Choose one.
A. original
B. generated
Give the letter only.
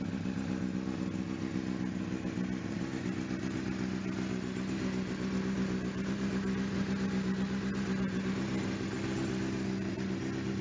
A